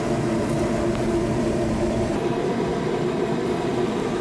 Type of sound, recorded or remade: remade